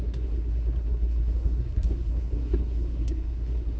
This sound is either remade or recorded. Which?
remade